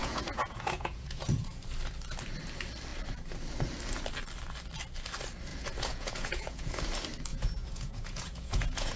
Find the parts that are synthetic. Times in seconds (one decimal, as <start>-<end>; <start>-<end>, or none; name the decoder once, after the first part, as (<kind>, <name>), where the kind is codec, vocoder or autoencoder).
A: 0.0-1.6 (vocoder, Vocos); 5.5-6.8; 7.3-9.0